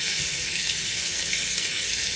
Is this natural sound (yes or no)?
no